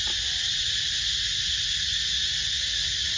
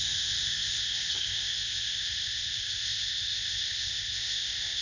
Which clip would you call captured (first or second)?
first